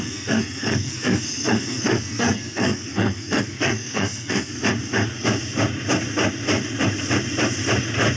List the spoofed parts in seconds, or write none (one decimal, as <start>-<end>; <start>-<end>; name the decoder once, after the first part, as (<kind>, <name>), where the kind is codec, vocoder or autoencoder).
0.0-4.5 (codec, SNAC)